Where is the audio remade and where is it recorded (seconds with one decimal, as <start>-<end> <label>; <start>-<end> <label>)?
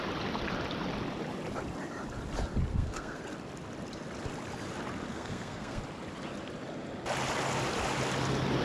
0.0-2.7 recorded; 2.7-3.2 remade; 3.2-5.1 recorded; 5.1-5.8 remade; 5.8-8.6 recorded